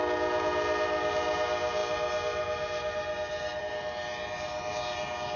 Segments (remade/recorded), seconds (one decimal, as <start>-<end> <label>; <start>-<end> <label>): 0.0-5.4 recorded